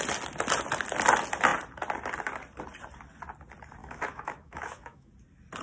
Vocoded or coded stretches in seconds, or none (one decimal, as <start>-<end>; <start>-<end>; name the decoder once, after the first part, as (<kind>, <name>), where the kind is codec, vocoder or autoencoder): 3.8-5.1 (autoencoder, DAC-VAE)